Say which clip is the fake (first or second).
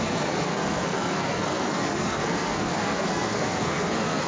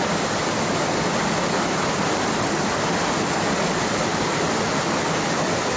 first